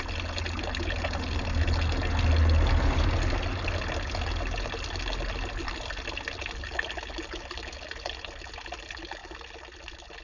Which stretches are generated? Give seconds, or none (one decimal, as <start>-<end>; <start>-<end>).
none